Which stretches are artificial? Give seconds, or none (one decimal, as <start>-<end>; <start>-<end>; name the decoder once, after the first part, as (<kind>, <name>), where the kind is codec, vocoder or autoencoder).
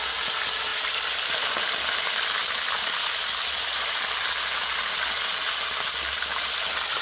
none